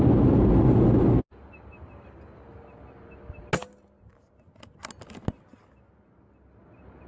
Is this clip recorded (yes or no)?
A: yes